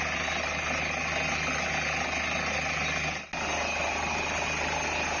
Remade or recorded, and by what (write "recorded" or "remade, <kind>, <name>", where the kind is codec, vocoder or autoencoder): recorded